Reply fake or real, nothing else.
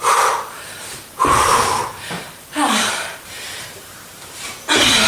fake